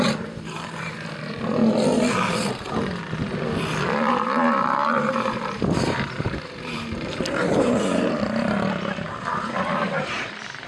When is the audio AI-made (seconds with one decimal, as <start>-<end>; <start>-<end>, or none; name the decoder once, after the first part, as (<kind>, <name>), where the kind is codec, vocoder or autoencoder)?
0.0-1.6 (vocoder, BigVGAN v2); 4.6-10.7